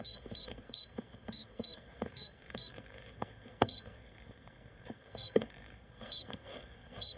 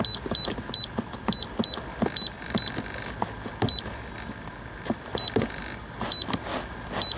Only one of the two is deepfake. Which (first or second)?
first